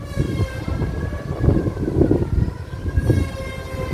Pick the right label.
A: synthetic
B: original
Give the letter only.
B